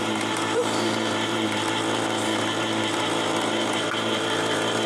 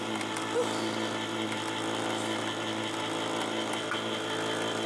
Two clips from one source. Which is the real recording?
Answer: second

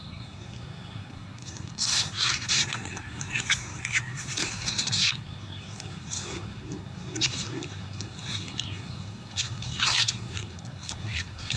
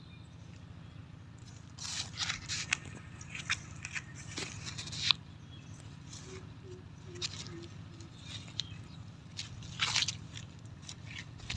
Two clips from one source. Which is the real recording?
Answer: second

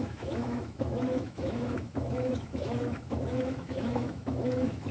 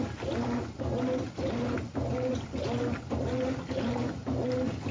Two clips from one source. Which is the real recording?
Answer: second